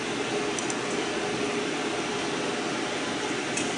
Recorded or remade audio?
recorded